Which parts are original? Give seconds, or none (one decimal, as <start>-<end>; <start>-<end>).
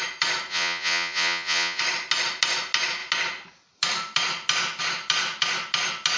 0.0-0.5; 1.8-6.2